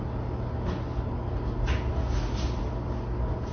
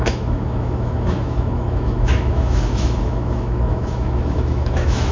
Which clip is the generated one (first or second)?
second